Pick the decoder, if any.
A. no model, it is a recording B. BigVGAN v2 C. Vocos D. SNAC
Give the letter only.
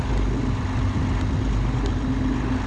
A